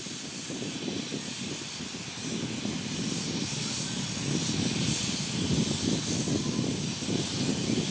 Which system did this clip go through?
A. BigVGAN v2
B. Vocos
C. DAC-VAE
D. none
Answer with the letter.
D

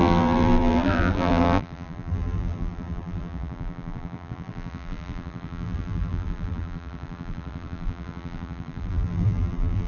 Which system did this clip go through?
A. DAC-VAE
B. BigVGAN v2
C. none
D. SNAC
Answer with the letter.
B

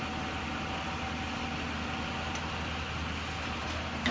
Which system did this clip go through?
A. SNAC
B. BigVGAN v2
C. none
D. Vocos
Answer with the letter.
C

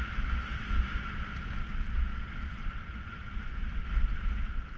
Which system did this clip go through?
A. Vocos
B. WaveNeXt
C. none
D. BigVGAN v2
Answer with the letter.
C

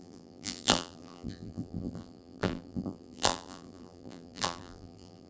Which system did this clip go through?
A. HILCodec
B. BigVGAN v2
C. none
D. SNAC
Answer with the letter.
B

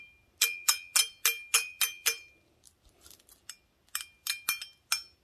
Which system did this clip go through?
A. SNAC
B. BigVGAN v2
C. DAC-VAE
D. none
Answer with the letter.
D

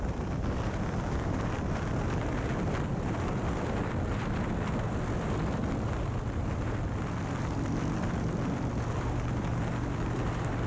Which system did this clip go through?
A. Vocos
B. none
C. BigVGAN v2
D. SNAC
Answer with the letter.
C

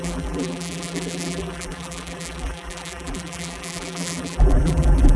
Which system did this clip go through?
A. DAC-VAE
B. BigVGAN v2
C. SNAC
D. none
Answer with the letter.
B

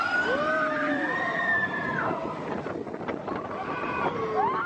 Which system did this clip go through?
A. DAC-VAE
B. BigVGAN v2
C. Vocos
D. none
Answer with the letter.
D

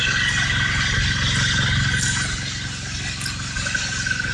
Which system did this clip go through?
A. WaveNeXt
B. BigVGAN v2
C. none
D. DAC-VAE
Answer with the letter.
C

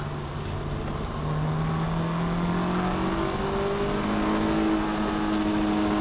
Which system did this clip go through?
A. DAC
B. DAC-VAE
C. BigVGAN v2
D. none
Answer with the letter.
D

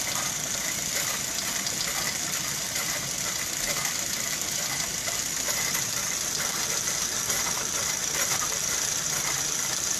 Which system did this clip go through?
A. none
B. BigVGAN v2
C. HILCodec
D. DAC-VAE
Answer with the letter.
B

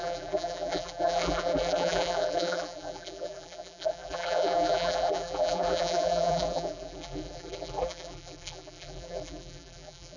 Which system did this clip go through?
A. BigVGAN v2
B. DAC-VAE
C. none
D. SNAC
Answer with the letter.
A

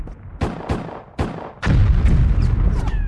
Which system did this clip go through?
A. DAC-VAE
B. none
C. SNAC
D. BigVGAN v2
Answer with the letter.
B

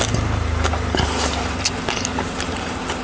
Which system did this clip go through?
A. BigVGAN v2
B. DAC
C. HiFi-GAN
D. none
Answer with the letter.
D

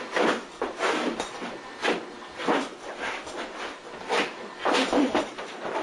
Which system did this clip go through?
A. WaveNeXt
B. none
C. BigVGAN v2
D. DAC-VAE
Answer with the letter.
B